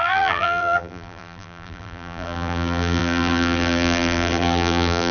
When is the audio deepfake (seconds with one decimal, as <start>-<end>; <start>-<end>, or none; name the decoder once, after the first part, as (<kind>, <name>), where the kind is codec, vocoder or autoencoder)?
0.0-5.1 (vocoder, BigVGAN v2)